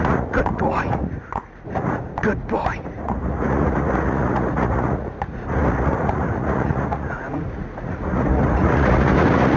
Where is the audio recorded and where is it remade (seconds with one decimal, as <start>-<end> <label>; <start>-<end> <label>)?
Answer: 0.0-9.6 remade